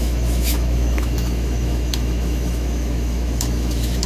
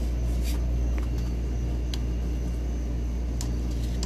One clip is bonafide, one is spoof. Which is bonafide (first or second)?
second